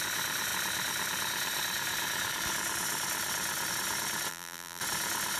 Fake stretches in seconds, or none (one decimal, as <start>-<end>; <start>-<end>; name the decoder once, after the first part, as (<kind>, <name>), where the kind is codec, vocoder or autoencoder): 4.3-4.8 (vocoder, BigVGAN v2)

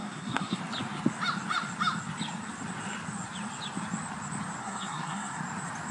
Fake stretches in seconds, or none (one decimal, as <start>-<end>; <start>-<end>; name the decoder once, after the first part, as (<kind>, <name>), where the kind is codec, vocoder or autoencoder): 0.0-0.6 (codec, SNAC); 4.6-5.4

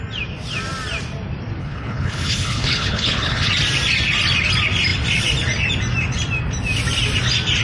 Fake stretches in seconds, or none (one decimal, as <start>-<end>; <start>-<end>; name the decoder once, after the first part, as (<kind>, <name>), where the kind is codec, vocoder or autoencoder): 1.6-3.5 (codec, HILCodec)

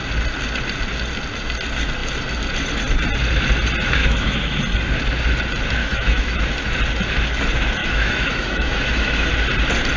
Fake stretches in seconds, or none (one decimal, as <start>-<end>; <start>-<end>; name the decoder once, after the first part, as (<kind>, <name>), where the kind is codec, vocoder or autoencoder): 4.0-4.6 (autoencoder, DAC-VAE); 5.8-6.4; 7.8-9.3

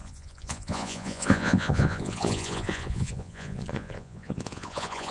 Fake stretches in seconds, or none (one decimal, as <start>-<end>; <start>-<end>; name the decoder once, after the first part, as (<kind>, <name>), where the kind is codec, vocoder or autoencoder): 0.0-5.1 (vocoder, Vocos)